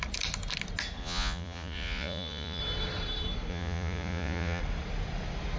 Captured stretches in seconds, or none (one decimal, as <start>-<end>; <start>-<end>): 0.0-1.0; 2.6-3.5; 4.6-5.6